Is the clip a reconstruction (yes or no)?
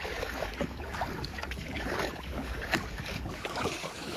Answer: yes